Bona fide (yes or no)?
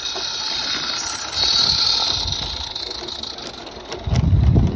yes